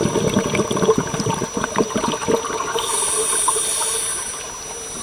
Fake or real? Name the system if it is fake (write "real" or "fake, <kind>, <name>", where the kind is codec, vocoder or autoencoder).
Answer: real